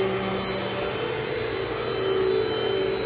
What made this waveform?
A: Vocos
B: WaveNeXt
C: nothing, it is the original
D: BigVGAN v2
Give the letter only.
C